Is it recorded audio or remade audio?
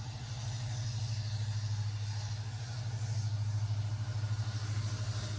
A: recorded